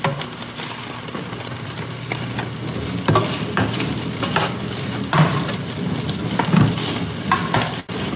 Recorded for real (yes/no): yes